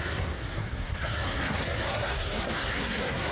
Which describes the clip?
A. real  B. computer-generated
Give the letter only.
B